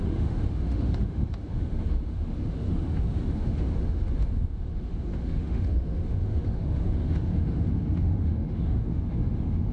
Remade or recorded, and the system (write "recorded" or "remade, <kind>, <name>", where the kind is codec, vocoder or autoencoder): remade, autoencoder, DAC-VAE